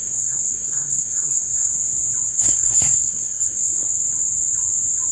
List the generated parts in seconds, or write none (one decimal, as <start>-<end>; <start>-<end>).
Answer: 0.0-1.7; 2.3-3.8